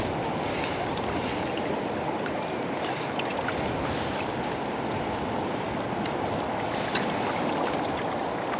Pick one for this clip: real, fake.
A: real